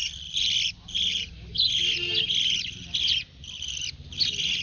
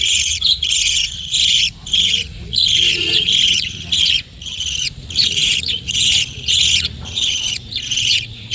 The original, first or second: first